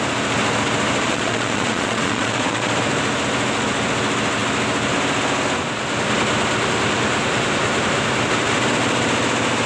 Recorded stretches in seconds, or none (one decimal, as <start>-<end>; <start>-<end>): 0.0-1.0; 2.7-9.7